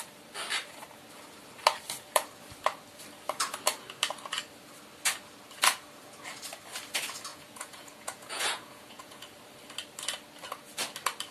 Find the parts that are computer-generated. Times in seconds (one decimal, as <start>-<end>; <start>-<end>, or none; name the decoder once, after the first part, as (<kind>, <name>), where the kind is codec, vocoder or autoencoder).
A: 7.3-9.2 (vocoder, Vocos)

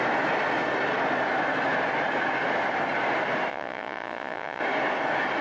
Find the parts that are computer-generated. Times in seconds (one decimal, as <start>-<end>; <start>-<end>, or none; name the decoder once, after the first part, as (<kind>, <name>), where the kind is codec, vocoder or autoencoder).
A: 3.5-4.6 (vocoder, Vocos)

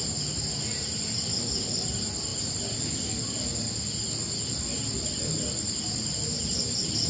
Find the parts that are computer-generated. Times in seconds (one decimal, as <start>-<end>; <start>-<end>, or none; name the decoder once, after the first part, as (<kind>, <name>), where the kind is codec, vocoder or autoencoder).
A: none

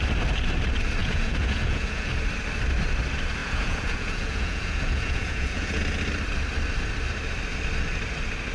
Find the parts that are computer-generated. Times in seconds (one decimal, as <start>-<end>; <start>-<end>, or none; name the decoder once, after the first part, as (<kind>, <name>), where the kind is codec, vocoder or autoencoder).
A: 1.0-2.1 (vocoder, Vocos); 3.4-5.8

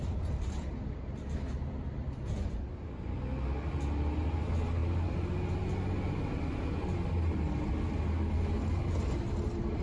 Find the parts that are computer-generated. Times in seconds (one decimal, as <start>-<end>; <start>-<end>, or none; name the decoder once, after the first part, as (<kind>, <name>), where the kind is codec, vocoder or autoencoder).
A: none

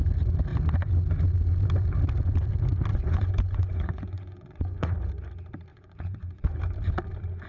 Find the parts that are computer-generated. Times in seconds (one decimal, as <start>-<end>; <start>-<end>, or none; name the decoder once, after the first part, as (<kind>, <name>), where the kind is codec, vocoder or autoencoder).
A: 2.9-5.1 (vocoder, Vocos); 5.7-6.6

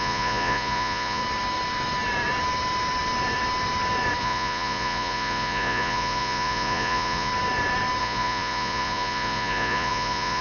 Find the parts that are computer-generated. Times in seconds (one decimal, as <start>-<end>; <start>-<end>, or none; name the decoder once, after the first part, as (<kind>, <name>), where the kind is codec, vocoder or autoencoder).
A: 0.0-1.2 (vocoder, Vocos); 4.2-7.3; 8.0-10.4